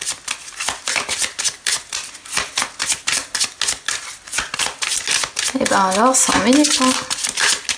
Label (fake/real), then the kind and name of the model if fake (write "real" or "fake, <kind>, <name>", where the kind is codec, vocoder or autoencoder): real